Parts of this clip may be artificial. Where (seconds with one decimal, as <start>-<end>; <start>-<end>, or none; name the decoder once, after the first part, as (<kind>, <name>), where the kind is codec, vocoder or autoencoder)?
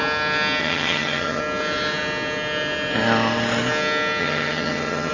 0.6-1.4 (vocoder, HiFi-GAN); 4.2-5.1